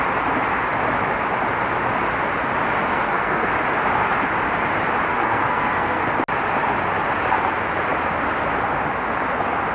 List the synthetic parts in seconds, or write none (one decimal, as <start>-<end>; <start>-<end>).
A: 2.9-3.5; 5.1-6.0